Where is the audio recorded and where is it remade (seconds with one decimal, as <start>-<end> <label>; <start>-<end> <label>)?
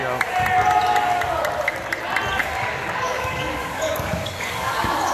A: 0.0-2.4 recorded; 2.4-5.1 remade